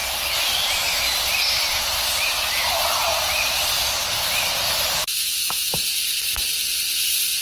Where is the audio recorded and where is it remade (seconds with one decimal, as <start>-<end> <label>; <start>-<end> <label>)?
0.0-5.0 recorded; 5.0-5.7 remade; 5.7-7.4 recorded